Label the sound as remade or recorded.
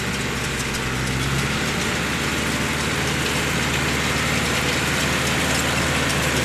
recorded